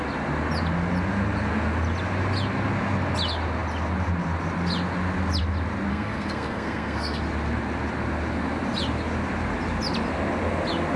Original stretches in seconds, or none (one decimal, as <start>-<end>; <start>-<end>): 0.0-5.9; 7.2-11.0